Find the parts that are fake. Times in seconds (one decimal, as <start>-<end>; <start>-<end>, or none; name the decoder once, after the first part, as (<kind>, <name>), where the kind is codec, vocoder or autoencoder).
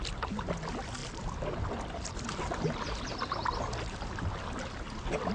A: 1.0-4.2 (vocoder, BigVGAN v2)